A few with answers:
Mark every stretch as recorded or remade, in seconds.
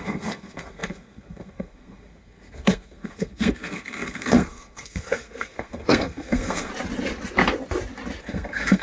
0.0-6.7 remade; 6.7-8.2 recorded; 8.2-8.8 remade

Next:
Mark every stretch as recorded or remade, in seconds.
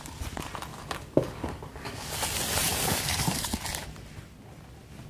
0.0-0.7 recorded; 0.7-2.2 remade; 2.2-2.7 recorded; 2.7-3.5 remade; 3.5-5.1 recorded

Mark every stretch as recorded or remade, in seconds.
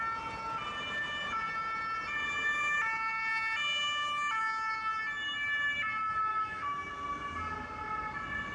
0.0-6.3 recorded; 6.3-6.9 remade; 6.9-8.5 recorded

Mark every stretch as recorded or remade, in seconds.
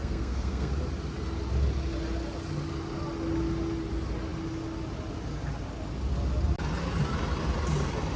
0.0-0.7 remade; 0.7-8.2 recorded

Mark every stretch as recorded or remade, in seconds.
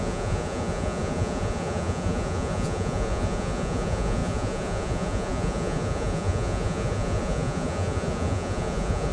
0.0-9.1 remade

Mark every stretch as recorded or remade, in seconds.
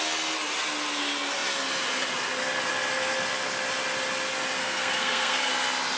0.0-4.6 recorded; 4.6-5.5 remade; 5.5-6.0 recorded